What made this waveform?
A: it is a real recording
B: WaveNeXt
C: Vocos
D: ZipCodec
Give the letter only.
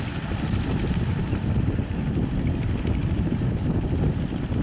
A